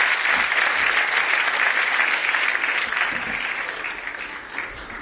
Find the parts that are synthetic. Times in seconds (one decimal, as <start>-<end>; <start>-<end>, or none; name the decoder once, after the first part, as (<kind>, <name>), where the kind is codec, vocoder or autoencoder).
none